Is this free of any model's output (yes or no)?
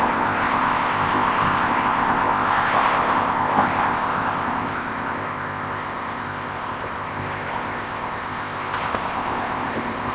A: no